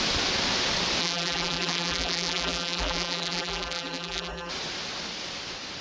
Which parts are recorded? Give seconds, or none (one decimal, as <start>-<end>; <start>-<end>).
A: 0.0-1.0; 4.5-5.8